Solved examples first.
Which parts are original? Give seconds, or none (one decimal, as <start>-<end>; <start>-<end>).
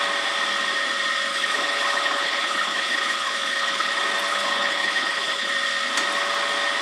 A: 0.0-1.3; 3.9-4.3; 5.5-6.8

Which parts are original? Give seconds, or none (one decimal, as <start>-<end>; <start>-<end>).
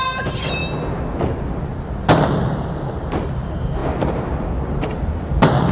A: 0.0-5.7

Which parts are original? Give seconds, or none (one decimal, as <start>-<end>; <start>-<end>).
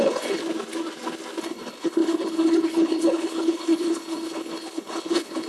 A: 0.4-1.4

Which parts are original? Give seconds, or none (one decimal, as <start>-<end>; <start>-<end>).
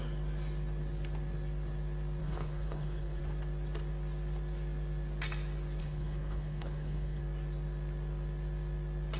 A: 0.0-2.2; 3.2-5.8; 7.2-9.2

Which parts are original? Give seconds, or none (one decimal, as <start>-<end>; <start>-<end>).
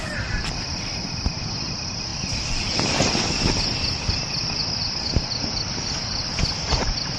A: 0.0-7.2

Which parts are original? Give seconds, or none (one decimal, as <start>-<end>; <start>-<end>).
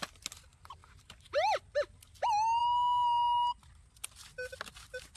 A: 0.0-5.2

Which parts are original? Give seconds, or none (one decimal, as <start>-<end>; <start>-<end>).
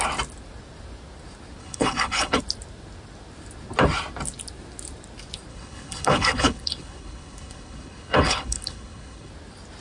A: 0.0-1.6; 2.4-5.5; 9.3-9.8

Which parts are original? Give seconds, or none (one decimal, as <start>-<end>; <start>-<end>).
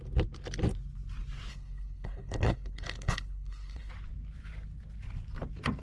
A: 0.0-1.5; 3.9-5.8